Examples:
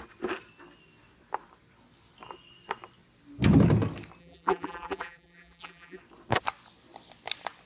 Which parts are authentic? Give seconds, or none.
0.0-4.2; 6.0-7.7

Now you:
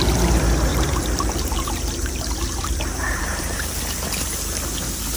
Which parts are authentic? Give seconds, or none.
0.0-0.7; 3.8-5.2

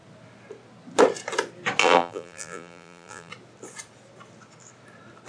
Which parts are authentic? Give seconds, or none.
0.0-1.8; 3.3-5.3